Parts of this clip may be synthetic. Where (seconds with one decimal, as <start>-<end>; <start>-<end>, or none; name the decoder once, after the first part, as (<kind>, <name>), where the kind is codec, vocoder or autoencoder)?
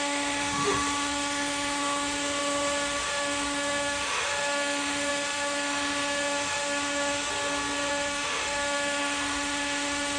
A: 0.0-7.3 (autoencoder, DAC-VAE); 7.9-10.2